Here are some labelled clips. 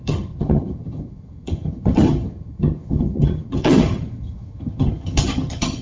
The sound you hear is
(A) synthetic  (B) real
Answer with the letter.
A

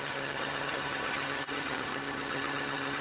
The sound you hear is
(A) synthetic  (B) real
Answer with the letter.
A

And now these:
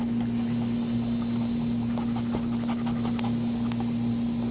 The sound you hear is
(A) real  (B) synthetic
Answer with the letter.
A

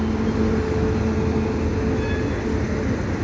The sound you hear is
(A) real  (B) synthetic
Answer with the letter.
A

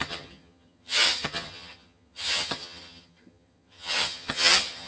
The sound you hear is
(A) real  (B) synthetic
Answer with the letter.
B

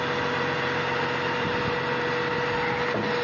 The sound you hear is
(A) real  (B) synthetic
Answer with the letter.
A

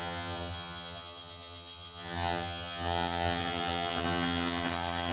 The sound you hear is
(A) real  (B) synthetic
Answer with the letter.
B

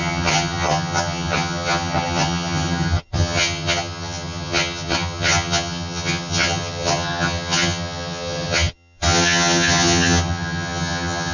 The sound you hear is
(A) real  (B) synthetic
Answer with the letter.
B